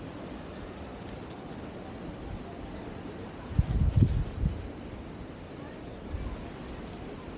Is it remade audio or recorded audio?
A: recorded